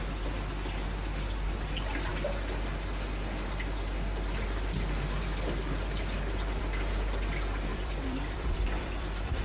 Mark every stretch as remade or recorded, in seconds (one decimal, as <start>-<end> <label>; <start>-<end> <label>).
0.0-7.7 recorded; 7.7-9.4 remade